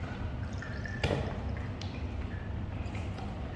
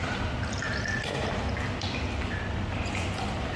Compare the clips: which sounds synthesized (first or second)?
first